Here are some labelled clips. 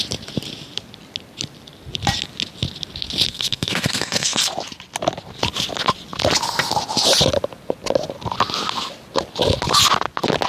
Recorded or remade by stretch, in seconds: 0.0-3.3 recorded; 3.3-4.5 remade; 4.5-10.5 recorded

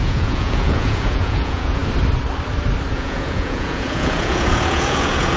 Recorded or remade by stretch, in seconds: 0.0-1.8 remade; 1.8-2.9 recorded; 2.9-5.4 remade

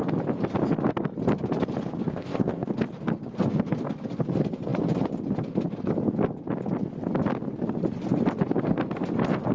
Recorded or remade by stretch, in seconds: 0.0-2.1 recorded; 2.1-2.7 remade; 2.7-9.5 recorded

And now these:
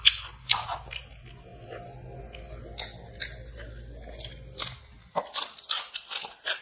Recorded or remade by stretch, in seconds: 0.0-6.6 recorded

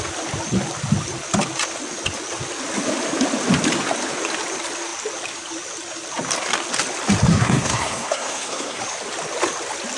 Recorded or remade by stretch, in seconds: 0.0-7.3 recorded; 7.3-8.8 remade; 8.8-10.0 recorded

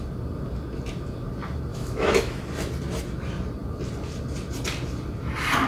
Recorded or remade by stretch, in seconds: 0.0-1.7 recorded; 1.7-2.4 remade; 2.4-5.7 recorded

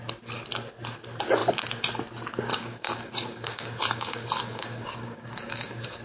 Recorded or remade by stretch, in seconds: 0.0-2.5 recorded; 2.5-6.0 remade

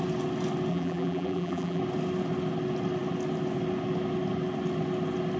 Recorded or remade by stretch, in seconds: 0.0-0.7 recorded; 0.7-1.8 remade; 1.8-5.4 recorded